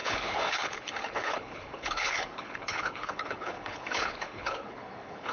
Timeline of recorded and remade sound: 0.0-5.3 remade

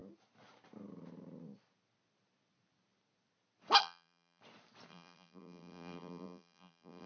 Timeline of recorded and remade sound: 0.0-3.8 recorded; 3.8-4.4 remade; 4.4-4.9 recorded; 4.9-7.1 remade

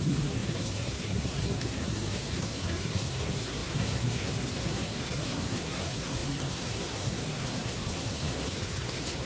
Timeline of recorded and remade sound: 0.0-9.3 remade